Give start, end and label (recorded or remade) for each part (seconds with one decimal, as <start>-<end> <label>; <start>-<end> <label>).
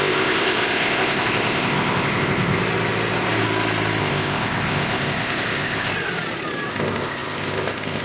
0.0-2.6 remade; 2.6-4.0 recorded; 4.0-5.9 remade; 5.9-6.7 recorded; 6.7-8.0 remade